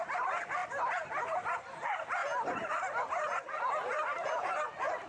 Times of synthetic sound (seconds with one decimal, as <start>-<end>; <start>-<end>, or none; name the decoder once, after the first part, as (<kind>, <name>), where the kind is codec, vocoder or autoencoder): none